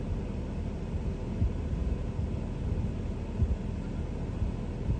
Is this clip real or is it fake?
real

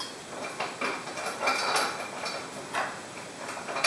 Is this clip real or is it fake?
real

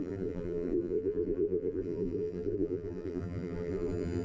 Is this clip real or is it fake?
fake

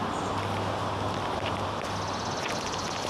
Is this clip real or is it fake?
real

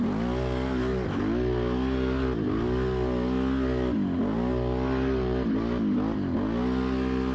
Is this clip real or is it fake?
real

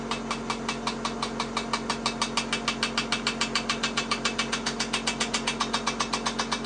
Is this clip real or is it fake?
real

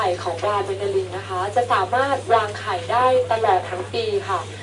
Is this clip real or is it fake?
real